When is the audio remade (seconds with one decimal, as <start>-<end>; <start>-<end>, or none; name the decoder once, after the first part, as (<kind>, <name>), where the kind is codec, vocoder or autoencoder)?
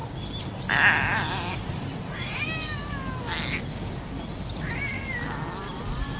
none